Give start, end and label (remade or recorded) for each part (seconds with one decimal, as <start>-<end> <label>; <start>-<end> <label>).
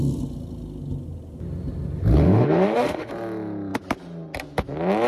0.0-2.2 recorded; 2.2-3.1 remade; 3.1-5.1 recorded